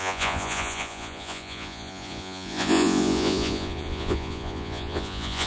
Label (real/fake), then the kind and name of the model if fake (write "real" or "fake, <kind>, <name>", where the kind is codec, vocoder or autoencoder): fake, vocoder, Vocos